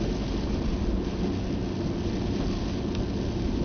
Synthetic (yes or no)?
no